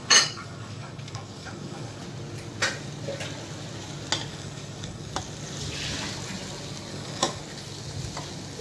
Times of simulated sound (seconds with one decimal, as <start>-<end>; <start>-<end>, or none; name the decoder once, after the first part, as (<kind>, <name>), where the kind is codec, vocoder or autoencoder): 0.0-2.0 (codec, DAC); 4.3-5.1; 6.9-7.4